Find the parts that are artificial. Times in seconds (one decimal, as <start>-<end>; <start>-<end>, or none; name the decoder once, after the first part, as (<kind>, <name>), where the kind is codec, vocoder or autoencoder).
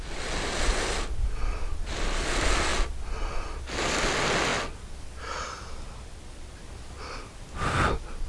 none